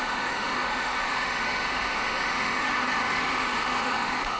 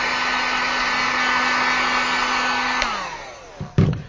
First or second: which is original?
second